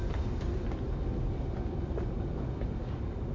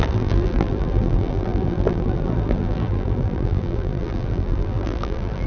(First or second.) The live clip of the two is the first